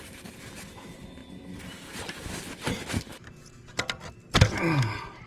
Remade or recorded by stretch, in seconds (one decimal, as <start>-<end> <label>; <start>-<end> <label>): 0.0-5.3 recorded